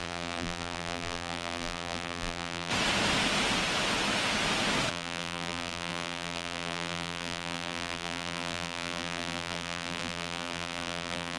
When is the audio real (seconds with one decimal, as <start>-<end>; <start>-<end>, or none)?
2.7-4.9